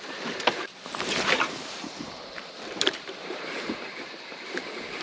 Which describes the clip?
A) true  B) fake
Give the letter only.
B